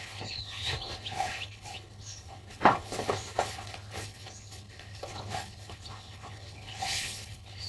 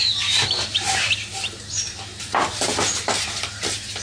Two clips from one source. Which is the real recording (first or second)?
second